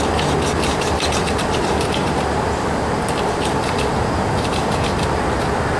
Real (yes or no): yes